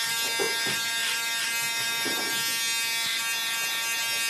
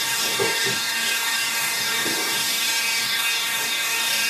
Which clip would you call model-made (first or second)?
second